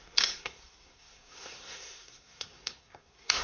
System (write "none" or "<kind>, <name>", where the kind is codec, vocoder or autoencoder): codec, SNAC